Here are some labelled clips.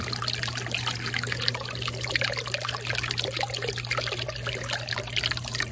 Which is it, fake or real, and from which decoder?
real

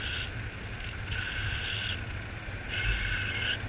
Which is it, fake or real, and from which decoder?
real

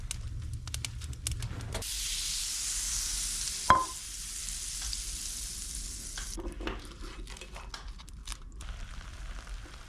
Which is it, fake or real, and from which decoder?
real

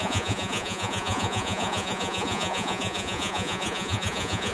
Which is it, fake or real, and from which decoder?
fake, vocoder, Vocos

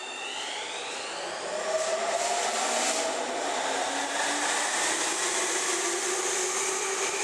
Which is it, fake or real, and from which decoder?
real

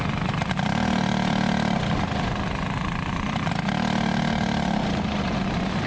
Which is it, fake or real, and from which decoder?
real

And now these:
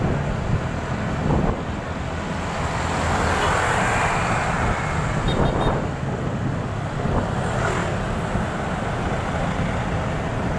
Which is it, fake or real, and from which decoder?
real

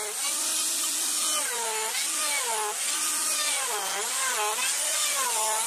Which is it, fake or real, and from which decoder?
real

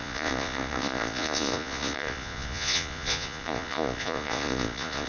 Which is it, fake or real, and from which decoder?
fake, vocoder, Vocos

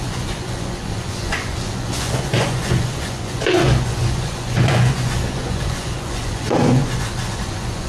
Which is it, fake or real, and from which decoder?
fake, vocoder, Vocos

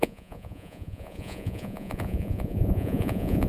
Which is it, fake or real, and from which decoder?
fake, vocoder, Vocos